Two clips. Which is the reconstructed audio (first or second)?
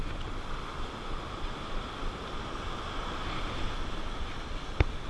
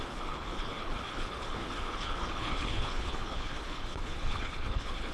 second